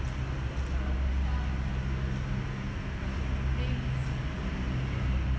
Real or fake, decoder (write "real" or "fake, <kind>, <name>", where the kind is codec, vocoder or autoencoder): real